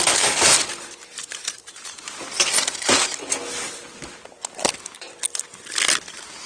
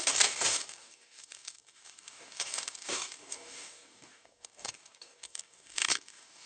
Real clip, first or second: first